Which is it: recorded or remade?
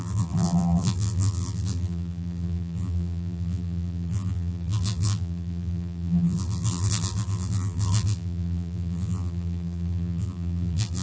remade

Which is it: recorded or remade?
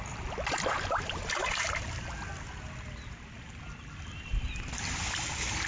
recorded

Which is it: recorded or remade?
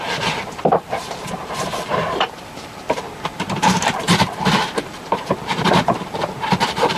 remade